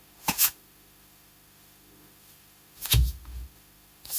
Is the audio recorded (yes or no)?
no